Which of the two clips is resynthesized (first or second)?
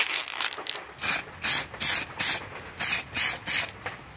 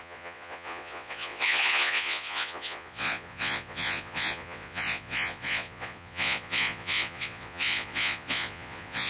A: second